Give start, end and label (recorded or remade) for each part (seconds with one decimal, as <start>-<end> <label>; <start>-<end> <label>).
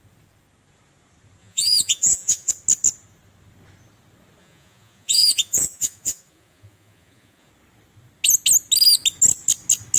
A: 0.0-1.4 recorded; 1.4-2.5 remade; 2.5-4.4 recorded; 4.4-7.5 remade; 7.5-10.0 recorded